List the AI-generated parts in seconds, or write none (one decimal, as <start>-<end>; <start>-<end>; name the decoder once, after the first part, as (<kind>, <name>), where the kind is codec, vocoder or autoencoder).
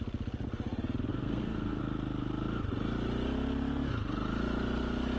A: 1.1-1.8 (codec, SNAC)